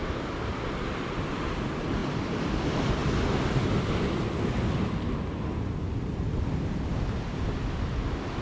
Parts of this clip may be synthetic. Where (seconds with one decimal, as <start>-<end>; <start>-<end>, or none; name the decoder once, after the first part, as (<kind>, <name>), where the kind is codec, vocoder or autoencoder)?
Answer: 2.0-2.6 (vocoder, BigVGAN v2)